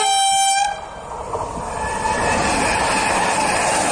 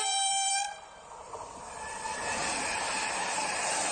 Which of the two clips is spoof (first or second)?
second